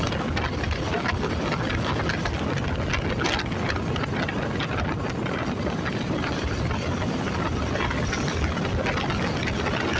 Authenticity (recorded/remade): recorded